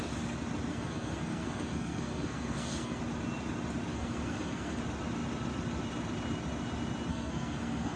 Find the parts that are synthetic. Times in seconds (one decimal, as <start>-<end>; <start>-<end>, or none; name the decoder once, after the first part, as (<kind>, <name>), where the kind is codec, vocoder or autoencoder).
0.7-3.0 (codec, SNAC); 3.9-4.8; 7.1-8.0